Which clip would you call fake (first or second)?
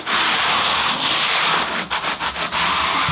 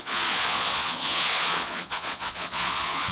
second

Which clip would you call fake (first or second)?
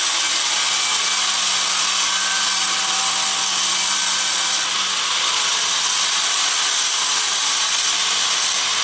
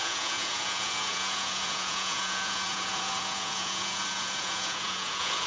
second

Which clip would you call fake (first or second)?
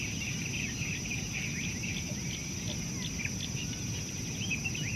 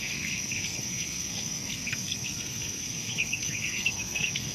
second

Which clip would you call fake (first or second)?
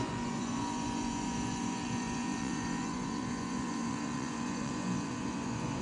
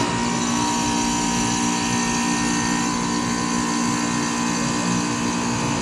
first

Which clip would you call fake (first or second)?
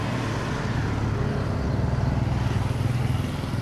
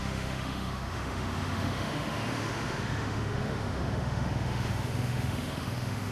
second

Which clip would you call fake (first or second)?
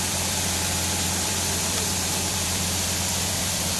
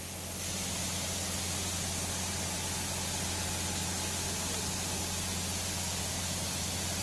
first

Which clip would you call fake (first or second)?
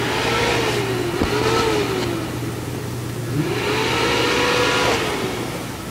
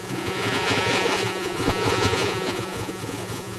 second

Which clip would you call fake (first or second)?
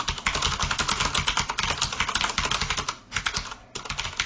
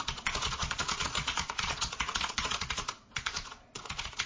second